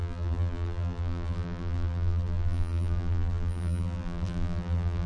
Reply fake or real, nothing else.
fake